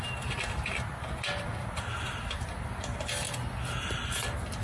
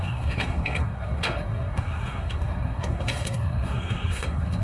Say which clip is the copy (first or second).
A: second